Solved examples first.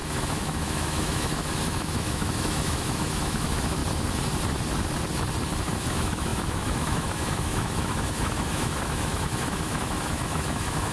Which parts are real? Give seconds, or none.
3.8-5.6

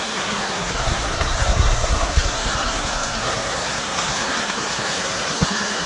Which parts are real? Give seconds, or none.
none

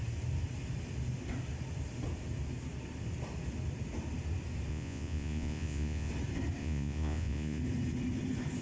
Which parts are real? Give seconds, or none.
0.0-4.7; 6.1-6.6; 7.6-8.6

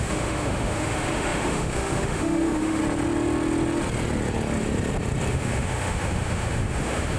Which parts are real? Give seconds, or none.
2.8-5.3

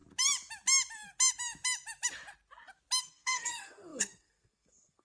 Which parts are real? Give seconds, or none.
0.0-3.0

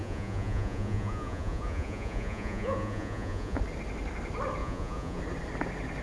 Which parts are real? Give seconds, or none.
3.6-4.6; 5.2-6.0

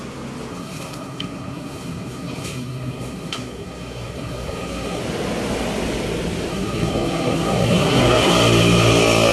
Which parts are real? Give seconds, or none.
0.0-0.5; 5.0-6.5; 8.3-9.3

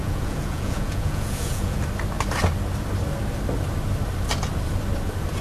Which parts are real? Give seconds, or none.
1.8-5.4